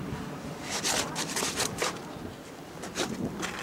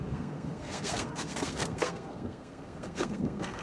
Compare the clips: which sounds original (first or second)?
first